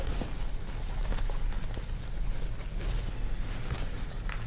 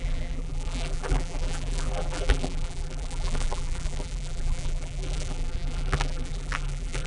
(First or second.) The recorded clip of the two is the first